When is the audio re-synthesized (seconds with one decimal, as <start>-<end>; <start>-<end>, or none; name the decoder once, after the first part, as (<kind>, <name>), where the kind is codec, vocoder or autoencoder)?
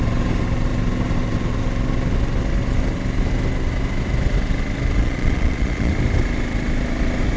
5.0-5.9 (vocoder, Vocos)